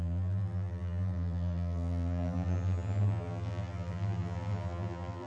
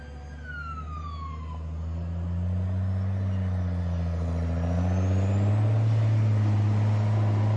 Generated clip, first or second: first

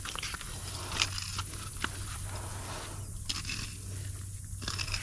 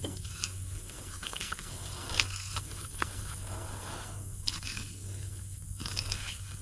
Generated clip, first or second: second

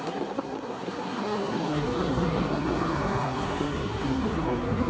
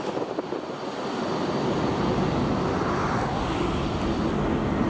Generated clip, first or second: first